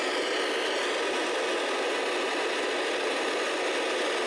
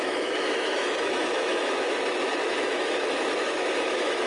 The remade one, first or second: second